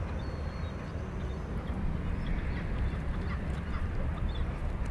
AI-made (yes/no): no